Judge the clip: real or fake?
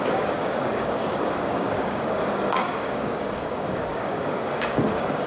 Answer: fake